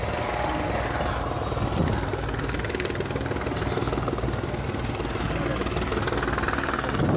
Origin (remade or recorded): recorded